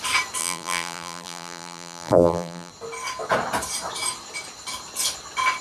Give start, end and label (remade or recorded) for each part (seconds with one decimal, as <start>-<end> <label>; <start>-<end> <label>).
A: 0.0-0.4 recorded; 0.4-2.7 remade; 2.7-5.6 recorded